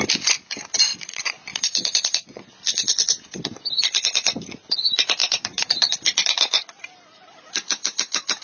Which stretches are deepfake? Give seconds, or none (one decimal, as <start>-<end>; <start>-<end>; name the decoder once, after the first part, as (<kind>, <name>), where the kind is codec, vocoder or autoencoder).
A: 0.9-2.4 (vocoder, Vocos); 5.2-5.9